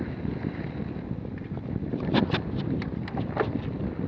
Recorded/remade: recorded